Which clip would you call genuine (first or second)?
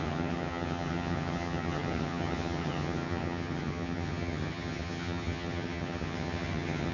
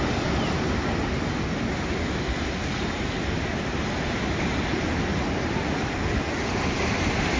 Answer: second